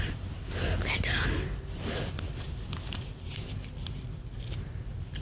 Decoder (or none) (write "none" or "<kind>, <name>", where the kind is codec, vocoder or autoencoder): none